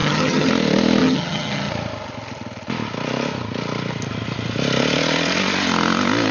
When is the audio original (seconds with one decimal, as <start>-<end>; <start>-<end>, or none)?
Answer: 0.5-1.0; 1.7-6.3